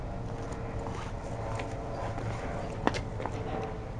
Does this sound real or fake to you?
real